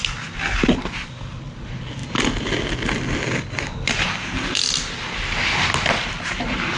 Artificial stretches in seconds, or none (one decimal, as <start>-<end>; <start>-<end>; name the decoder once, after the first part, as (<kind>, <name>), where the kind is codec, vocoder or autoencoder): none